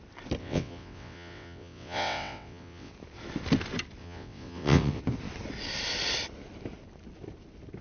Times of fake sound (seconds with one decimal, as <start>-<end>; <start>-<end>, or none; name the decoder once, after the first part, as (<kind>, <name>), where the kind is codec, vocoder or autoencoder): 0.4-2.9 (vocoder, WaveNeXt); 4.0-5.0